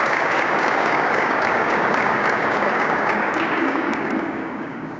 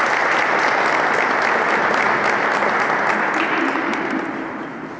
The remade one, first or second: first